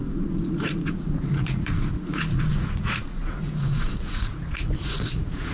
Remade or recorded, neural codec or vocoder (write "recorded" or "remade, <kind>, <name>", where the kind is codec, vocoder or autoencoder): remade, vocoder, Vocos